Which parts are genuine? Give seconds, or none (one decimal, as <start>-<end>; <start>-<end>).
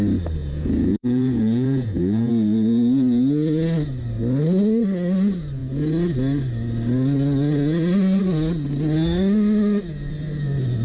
0.0-0.4; 2.3-10.8